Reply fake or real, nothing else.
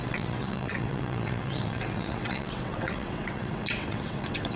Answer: fake